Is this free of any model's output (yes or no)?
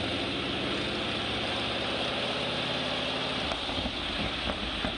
yes